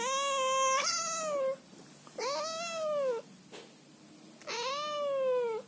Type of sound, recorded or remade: recorded